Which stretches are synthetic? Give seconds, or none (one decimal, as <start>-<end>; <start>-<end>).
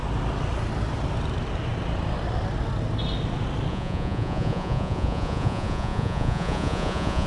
3.7-7.3